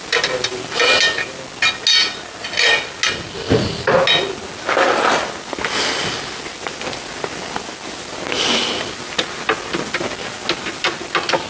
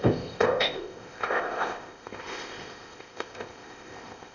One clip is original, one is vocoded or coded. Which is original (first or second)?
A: first